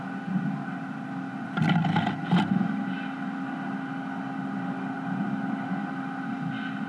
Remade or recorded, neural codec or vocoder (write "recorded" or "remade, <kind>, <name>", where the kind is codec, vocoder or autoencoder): recorded